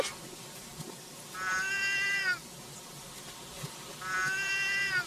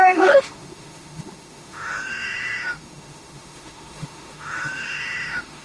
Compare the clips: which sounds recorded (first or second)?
first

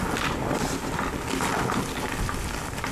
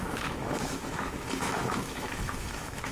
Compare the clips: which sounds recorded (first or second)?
first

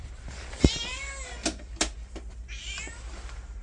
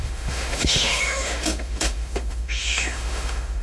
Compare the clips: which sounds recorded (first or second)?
first